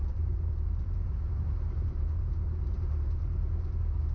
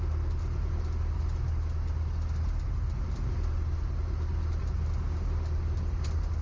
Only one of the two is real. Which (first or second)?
second